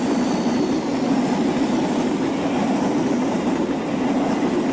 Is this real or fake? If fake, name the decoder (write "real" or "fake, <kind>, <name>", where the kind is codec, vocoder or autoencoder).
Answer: real